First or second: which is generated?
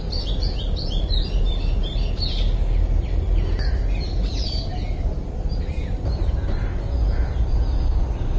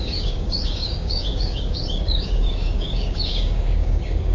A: second